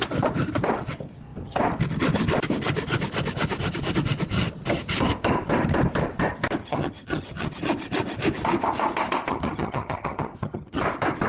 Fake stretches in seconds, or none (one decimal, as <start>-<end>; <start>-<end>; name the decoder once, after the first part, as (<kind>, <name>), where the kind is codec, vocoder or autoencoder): 6.6-7.6 (vocoder, HiFi-GAN); 9.3-10.8